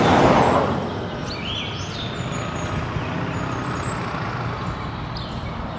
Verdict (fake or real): real